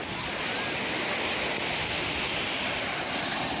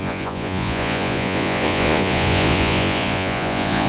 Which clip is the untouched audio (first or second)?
first